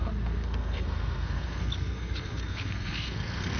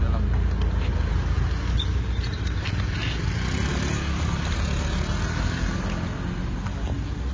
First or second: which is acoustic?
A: second